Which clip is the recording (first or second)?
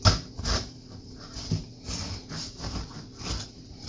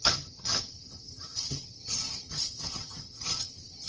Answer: first